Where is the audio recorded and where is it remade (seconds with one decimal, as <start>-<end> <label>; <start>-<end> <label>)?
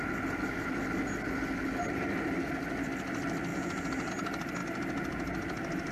0.0-3.5 recorded; 3.5-4.1 remade; 4.1-5.9 recorded